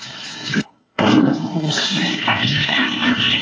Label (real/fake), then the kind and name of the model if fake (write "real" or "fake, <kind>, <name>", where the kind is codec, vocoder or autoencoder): fake, codec, SNAC